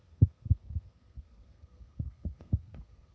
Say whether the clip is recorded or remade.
remade